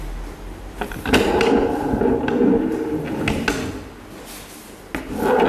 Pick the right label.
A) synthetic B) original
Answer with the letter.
B